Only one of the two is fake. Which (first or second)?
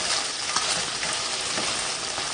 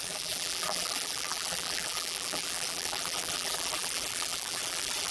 second